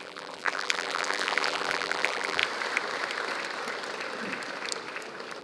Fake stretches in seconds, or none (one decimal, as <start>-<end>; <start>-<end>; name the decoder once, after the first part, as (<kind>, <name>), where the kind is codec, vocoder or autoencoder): 0.0-2.4 (vocoder, BigVGAN v2)